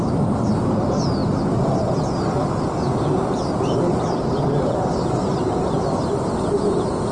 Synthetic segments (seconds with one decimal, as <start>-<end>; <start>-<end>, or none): none

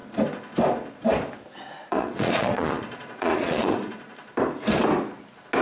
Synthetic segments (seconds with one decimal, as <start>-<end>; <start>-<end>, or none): 1.8-4.3

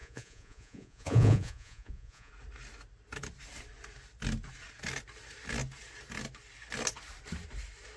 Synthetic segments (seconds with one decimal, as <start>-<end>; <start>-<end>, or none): 0.0-2.3

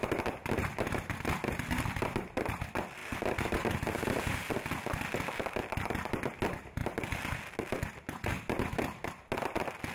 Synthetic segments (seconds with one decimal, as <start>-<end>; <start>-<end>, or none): none

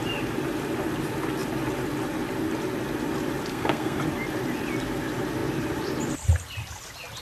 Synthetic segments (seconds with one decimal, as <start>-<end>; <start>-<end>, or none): 3.5-4.0

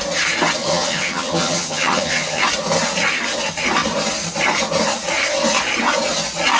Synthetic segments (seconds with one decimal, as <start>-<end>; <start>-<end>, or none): 0.6-2.4

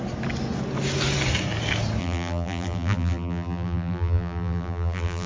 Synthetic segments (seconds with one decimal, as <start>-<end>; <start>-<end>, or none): 2.0-5.3

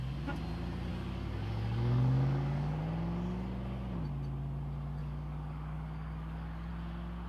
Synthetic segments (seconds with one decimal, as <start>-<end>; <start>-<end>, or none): 0.9-2.8; 5.0-6.7